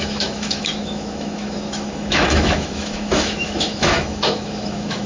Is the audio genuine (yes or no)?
no